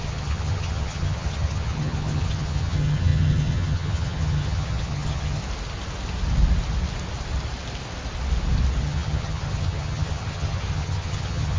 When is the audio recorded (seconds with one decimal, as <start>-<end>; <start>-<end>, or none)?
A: 5.4-8.8